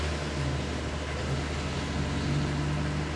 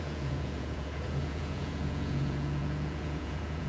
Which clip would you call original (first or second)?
first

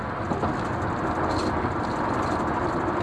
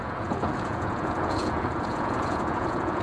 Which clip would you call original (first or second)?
first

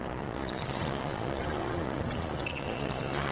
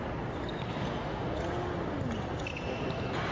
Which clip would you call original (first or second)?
second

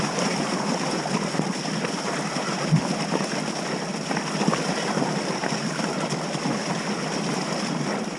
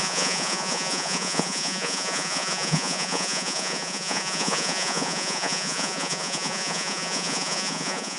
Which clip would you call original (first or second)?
first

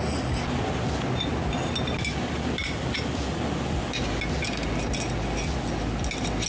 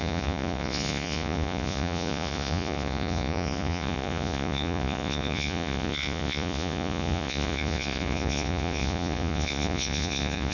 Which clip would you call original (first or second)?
first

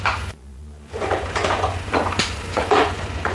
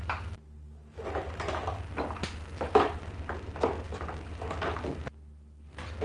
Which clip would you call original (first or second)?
second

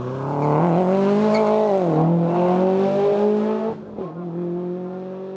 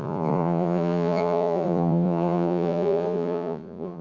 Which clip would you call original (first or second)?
first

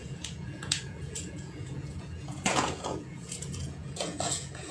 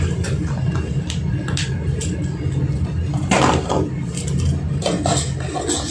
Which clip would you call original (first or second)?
second